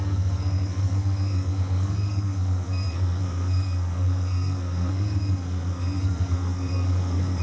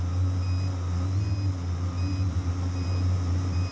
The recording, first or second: second